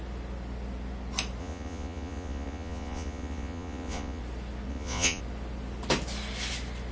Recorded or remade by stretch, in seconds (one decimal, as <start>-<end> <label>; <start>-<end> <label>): 0.0-1.4 recorded; 1.4-4.2 remade; 4.2-4.7 recorded; 4.7-5.2 remade; 5.2-6.9 recorded